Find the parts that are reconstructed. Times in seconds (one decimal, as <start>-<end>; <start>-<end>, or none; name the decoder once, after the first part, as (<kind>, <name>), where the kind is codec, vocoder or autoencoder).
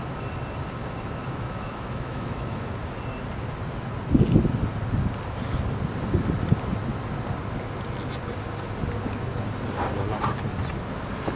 0.8-2.7 (autoencoder, DAC-VAE)